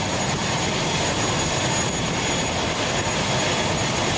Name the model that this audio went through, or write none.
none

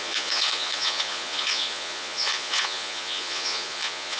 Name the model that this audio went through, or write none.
vocoder, Vocos